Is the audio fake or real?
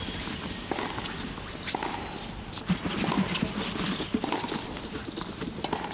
real